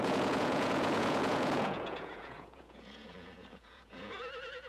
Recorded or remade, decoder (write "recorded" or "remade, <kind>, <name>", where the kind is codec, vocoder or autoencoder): remade, vocoder, Vocos